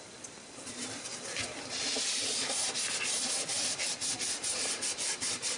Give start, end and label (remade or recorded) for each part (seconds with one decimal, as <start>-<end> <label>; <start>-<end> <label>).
0.0-5.6 recorded